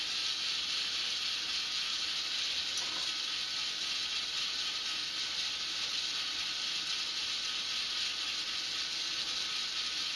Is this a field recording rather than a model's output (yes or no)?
yes